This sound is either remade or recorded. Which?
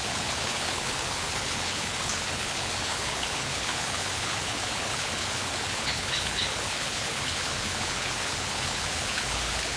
remade